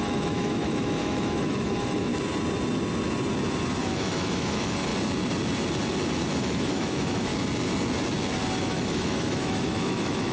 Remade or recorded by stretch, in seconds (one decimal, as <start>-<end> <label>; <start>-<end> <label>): 0.0-2.1 remade; 2.1-3.8 recorded; 3.8-4.9 remade; 4.9-6.4 recorded; 6.4-7.3 remade; 7.3-8.6 recorded; 8.6-10.3 remade